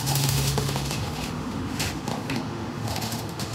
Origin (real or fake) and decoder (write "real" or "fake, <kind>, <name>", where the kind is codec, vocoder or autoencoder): fake, autoencoder, DAC-VAE